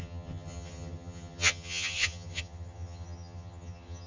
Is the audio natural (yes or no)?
no